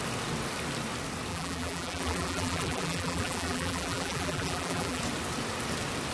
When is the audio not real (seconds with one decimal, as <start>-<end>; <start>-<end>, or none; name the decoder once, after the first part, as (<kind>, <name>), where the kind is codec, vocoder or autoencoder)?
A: 1.3-5.0 (vocoder, BigVGAN v2)